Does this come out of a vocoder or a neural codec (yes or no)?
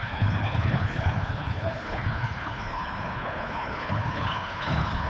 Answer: yes